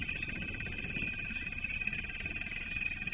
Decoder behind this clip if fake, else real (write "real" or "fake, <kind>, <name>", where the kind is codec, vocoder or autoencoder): real